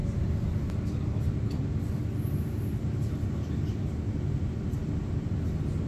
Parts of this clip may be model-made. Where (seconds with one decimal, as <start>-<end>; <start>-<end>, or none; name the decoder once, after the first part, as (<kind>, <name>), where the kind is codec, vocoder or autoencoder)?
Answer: none